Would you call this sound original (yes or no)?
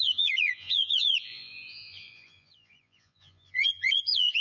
no